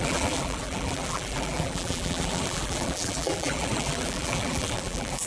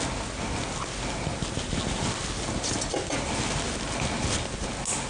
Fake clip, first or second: first